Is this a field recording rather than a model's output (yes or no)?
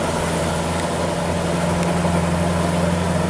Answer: yes